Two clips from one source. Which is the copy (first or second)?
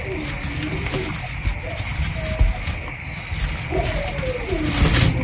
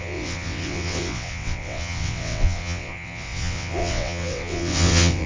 second